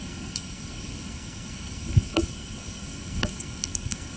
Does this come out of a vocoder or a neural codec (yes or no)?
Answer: yes